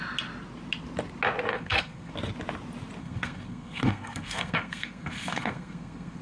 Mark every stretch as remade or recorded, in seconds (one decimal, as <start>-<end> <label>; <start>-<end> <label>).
0.0-1.5 recorded; 1.5-2.1 remade; 2.1-3.0 recorded; 3.0-6.2 remade